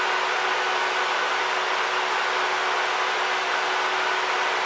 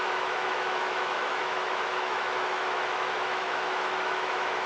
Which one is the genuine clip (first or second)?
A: first